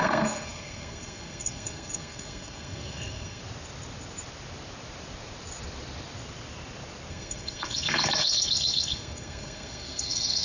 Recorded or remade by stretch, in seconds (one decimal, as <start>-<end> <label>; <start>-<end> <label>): 0.0-3.4 remade; 3.4-7.1 recorded; 7.1-10.4 remade